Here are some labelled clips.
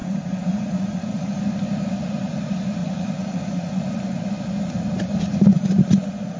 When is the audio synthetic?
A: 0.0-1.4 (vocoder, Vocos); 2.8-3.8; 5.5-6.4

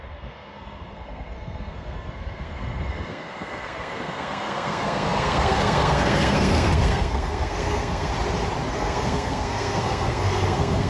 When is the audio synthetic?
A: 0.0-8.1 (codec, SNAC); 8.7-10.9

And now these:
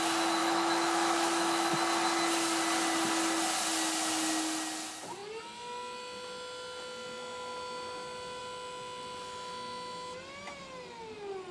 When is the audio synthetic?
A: 0.4-1.7 (autoencoder, DAC-VAE)

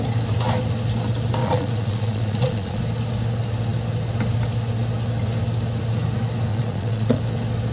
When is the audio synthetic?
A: 1.4-2.8 (vocoder, Vocos); 6.5-7.2

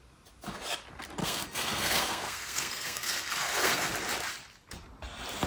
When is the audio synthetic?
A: 1.2-3.9 (codec, SNAC)

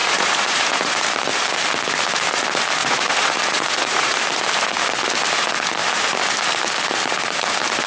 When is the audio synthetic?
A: 0.0-0.9 (vocoder, Vocos); 2.8-4.2